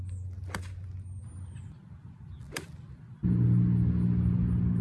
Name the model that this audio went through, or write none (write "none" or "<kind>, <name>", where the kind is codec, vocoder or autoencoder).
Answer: none